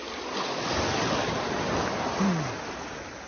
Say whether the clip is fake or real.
real